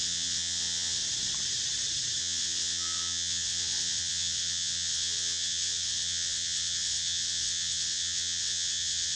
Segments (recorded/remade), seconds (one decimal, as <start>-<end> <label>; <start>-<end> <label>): 0.0-1.0 remade; 1.0-2.2 recorded; 2.2-9.2 remade